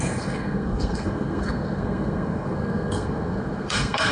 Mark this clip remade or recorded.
remade